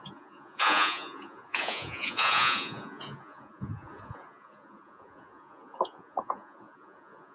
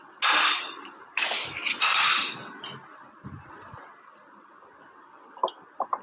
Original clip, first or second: second